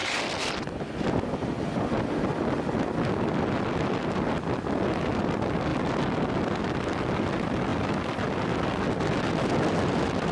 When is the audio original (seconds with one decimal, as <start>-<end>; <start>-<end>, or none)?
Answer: 0.0-10.3